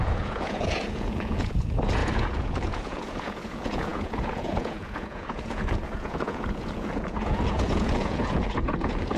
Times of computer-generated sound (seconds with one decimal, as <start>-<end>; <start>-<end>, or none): 0.0-9.2